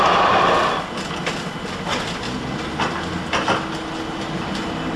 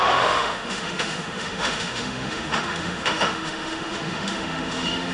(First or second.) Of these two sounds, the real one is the first